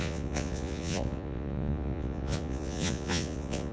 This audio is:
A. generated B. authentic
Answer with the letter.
A